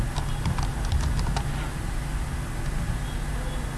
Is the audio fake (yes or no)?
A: no